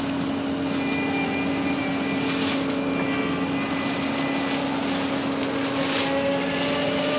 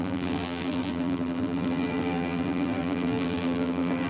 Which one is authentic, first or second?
first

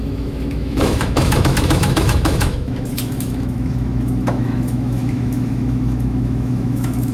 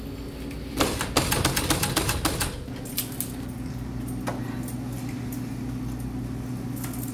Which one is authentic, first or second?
second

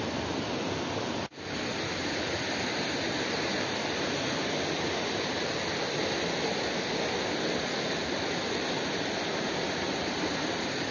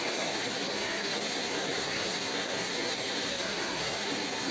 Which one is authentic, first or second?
first